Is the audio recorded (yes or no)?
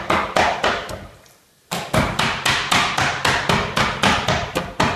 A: yes